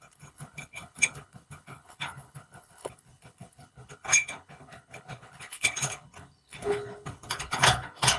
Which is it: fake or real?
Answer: fake